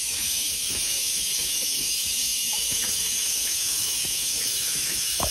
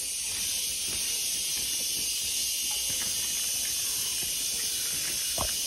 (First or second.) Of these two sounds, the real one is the second